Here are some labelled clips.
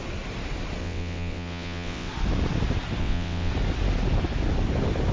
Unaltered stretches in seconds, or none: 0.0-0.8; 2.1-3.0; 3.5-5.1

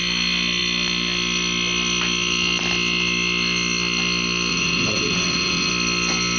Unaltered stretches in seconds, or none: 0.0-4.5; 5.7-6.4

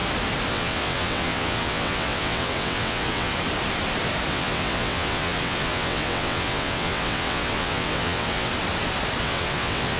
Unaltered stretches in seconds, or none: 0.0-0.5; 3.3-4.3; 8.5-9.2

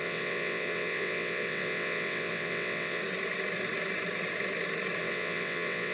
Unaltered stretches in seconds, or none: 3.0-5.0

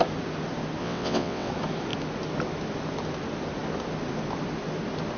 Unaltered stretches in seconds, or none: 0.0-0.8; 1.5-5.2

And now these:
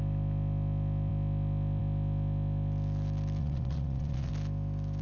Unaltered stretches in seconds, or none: 0.0-3.4; 4.3-5.0

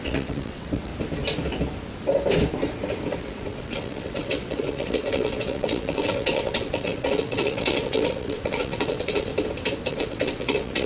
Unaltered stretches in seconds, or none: 0.9-3.2; 9.3-9.9

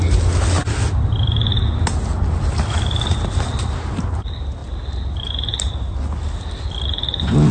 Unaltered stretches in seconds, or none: 0.0-7.5